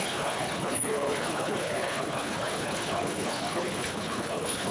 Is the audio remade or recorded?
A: remade